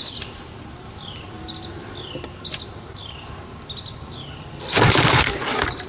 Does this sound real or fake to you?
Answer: real